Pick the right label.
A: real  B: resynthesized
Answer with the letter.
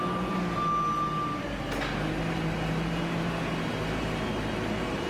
A